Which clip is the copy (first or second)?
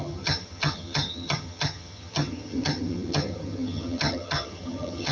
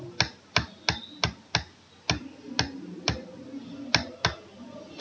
first